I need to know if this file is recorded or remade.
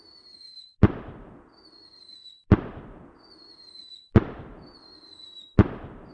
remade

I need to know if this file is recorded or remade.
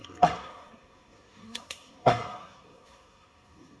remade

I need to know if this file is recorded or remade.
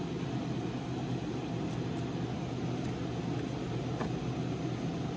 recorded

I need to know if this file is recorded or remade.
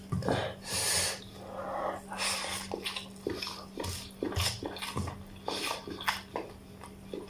recorded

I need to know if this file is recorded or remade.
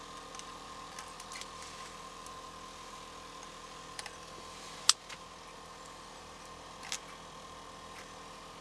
recorded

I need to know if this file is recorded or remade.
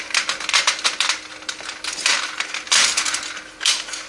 recorded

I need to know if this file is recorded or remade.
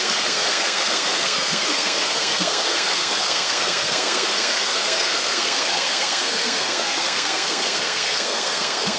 remade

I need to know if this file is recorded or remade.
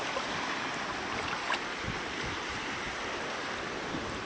recorded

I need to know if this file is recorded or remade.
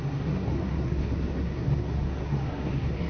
remade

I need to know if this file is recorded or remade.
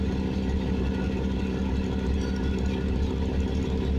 recorded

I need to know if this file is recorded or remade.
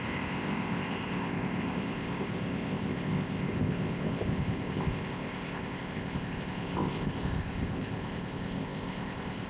remade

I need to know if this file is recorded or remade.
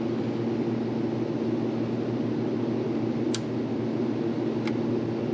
recorded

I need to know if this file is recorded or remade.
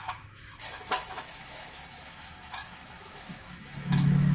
remade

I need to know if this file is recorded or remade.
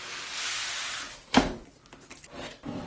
recorded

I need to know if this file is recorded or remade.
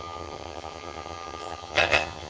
remade